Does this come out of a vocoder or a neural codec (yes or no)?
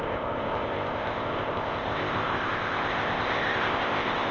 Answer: yes